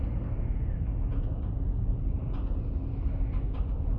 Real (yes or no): yes